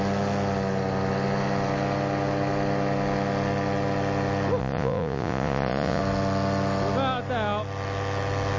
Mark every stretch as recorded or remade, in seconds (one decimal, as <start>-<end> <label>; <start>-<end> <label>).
0.0-4.6 recorded; 4.6-6.0 remade; 6.0-8.6 recorded